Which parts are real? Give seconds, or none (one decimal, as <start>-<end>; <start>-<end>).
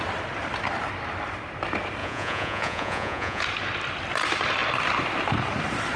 0.0-2.0; 3.4-6.0